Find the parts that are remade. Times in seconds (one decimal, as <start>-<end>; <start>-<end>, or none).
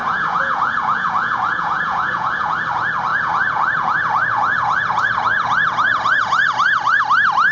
0.0-2.5; 3.1-7.0